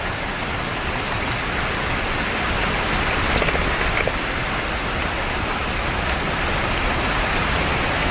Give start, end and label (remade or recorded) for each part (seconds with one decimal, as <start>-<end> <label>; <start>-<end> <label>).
0.0-8.1 recorded